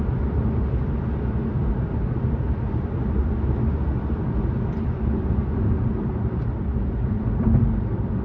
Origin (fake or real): fake